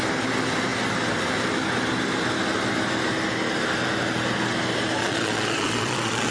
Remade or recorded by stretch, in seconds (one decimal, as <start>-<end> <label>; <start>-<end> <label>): 0.0-5.0 recorded; 5.0-6.3 remade